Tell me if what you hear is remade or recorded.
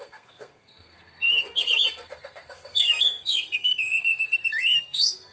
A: remade